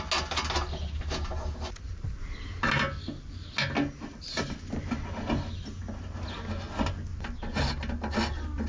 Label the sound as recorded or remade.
recorded